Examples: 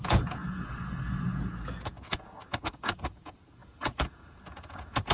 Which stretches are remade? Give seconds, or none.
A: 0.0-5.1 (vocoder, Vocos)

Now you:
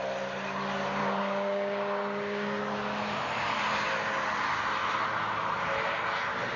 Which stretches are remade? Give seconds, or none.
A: 1.0-2.6 (codec, DAC)